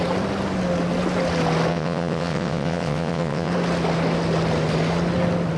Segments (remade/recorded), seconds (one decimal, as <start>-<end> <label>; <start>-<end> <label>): 0.0-1.7 recorded; 1.7-3.5 remade; 3.5-5.6 recorded